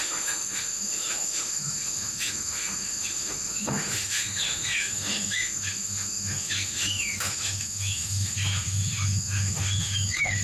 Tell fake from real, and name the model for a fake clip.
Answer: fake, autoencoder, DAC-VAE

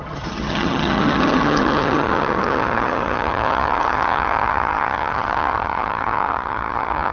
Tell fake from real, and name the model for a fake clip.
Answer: fake, vocoder, HiFi-GAN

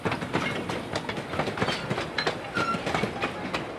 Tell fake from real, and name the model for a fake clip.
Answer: real